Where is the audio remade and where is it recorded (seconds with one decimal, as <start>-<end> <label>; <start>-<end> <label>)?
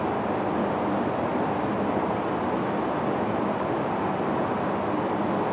0.0-5.5 recorded